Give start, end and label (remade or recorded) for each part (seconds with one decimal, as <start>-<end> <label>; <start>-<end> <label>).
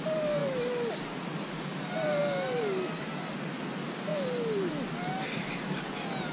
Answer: 0.0-6.3 recorded